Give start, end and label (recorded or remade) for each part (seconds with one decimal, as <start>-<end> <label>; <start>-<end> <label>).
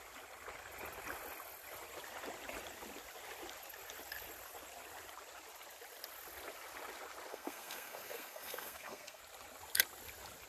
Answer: 0.0-7.3 recorded; 7.3-9.2 remade; 9.2-10.5 recorded